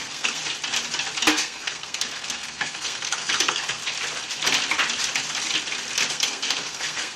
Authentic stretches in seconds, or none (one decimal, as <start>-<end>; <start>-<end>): 0.4-1.3; 3.8-6.1